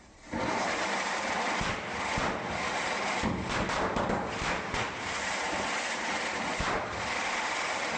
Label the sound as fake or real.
fake